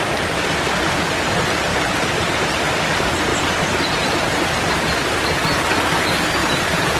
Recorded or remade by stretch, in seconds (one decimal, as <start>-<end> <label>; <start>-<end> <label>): 0.0-1.7 recorded; 1.7-2.6 remade; 2.6-3.3 recorded; 3.3-4.6 remade; 4.6-6.4 recorded; 6.4-7.0 remade